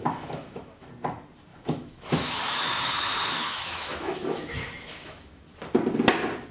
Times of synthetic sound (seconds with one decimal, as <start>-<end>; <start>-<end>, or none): 0.0-0.9; 1.5-5.4